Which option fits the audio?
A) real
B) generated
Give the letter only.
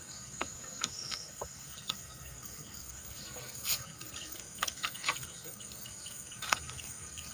B